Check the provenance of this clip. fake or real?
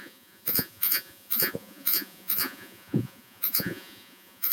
fake